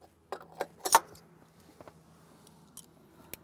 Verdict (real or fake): real